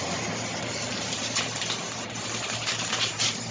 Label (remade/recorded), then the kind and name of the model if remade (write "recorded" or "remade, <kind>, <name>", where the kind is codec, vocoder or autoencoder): recorded